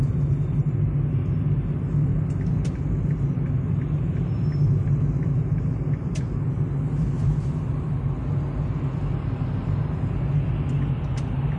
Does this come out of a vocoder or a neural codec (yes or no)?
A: no